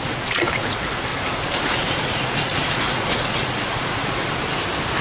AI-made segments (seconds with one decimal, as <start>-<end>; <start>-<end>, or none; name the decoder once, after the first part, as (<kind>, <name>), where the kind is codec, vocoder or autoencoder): 0.0-4.2 (vocoder, Vocos)